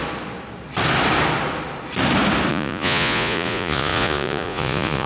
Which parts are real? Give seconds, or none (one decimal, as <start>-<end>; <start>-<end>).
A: 0.0-2.5